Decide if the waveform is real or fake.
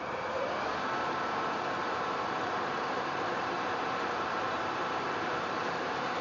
fake